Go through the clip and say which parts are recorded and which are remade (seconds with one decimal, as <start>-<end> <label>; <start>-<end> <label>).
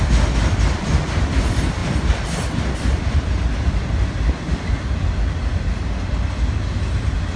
0.0-7.4 recorded